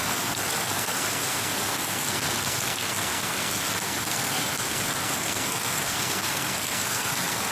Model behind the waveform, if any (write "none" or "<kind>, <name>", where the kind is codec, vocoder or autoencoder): codec, SNAC